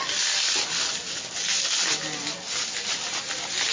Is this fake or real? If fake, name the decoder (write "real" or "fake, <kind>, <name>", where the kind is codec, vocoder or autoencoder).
real